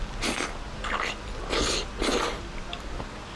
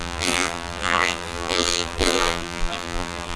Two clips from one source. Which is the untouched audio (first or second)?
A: first